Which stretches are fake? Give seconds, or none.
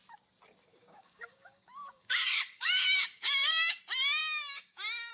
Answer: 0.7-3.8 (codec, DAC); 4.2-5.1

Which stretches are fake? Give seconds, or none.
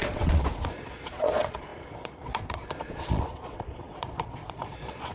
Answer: 0.0-5.1 (vocoder, Vocos)